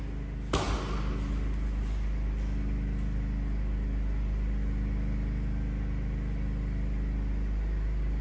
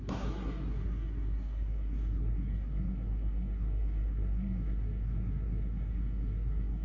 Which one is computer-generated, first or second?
second